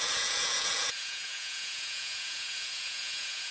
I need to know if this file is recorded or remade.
remade